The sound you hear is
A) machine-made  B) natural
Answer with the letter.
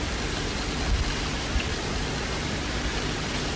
B